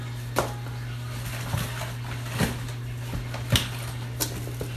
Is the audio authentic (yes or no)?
yes